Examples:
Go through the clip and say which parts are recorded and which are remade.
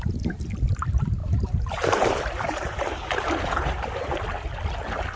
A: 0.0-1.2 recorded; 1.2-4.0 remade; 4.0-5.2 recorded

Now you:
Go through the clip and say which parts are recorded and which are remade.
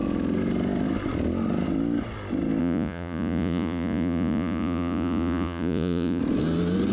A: 0.0-2.6 recorded; 2.6-6.2 remade; 6.2-6.9 recorded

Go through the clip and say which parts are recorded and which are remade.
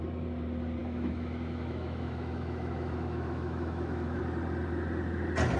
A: 0.0-0.8 recorded; 0.8-4.2 remade; 4.2-5.6 recorded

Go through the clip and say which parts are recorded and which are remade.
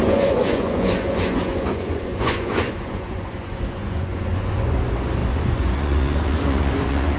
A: 0.0-7.2 remade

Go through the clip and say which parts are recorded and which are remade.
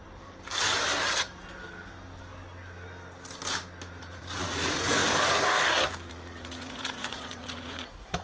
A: 0.0-4.0 recorded; 4.0-5.0 remade; 5.0-6.1 recorded; 6.1-8.2 remade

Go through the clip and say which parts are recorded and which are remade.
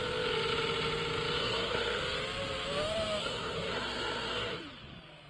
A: 0.0-1.4 recorded; 1.4-2.0 remade; 2.0-3.2 recorded; 3.2-4.6 remade; 4.6-5.3 recorded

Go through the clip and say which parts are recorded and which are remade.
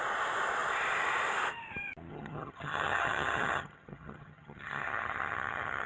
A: 0.0-2.1 recorded; 2.1-5.9 remade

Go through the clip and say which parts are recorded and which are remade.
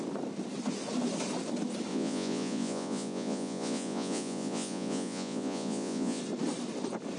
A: 0.0-1.9 recorded; 1.9-6.2 remade; 6.2-7.2 recorded